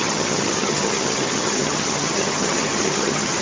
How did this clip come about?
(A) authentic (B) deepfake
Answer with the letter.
B